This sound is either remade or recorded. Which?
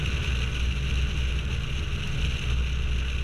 recorded